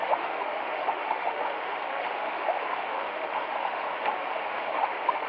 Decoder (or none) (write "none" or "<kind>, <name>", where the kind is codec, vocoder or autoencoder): autoencoder, DAC-VAE